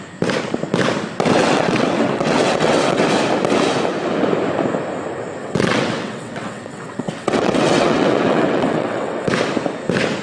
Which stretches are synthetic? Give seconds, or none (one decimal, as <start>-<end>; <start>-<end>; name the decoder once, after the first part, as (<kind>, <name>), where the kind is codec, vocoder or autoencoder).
1.4-3.0 (vocoder, WaveNeXt); 5.4-9.3